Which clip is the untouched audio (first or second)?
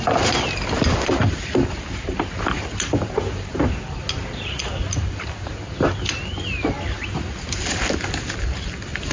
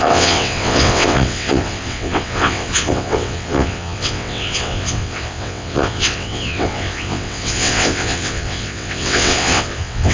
first